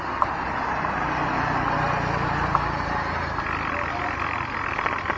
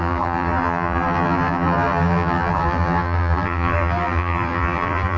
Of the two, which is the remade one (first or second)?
second